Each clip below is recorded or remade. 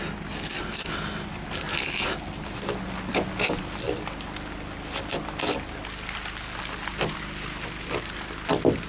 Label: recorded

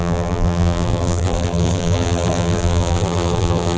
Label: remade